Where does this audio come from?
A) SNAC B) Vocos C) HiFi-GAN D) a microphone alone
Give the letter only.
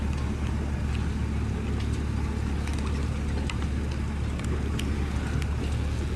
D